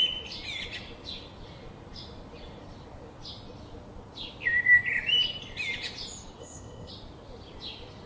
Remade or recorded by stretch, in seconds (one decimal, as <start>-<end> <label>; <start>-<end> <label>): 0.0-6.4 recorded; 6.4-6.9 remade; 6.9-8.1 recorded